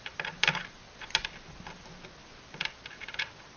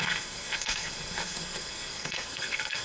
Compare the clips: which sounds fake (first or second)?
second